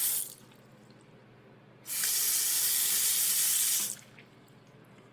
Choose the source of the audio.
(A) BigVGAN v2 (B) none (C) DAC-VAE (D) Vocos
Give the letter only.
B